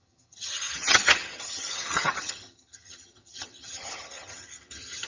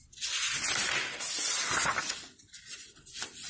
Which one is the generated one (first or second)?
first